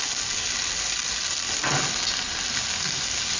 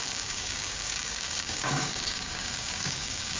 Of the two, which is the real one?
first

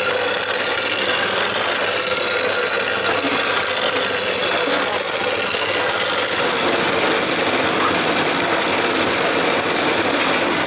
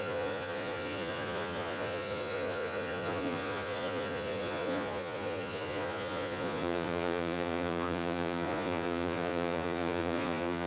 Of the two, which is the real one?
first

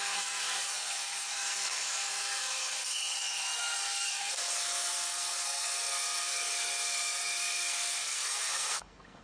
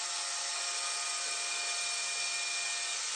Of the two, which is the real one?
second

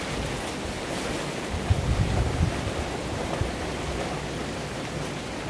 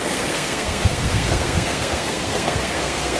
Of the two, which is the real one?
first